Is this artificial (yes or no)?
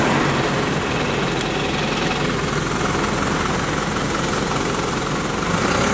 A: no